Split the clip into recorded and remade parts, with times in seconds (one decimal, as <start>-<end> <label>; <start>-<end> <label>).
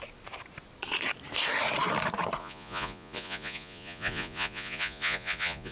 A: 0.0-2.4 recorded; 2.4-5.7 remade